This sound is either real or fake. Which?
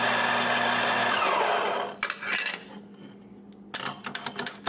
real